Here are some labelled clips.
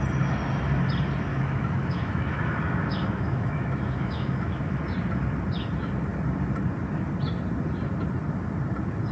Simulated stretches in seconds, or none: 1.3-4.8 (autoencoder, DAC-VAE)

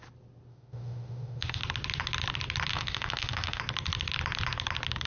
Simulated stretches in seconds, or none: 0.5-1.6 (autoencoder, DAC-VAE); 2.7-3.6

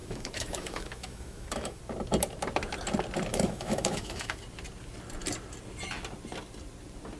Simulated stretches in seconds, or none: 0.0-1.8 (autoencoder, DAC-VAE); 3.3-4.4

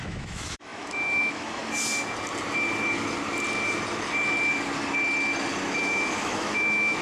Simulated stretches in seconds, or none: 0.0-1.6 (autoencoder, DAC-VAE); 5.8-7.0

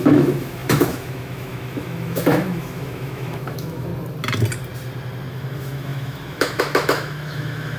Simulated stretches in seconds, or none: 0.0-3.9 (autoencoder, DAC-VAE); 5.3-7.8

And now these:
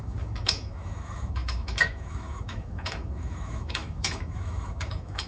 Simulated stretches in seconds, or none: 0.0-5.3 (autoencoder, DAC-VAE)